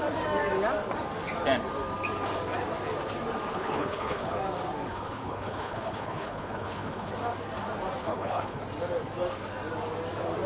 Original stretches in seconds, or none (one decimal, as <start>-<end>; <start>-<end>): 0.0-3.5; 4.3-4.9; 7.1-8.0; 8.6-10.5